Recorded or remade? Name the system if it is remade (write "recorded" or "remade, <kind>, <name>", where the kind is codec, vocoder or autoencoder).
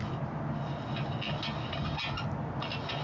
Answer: recorded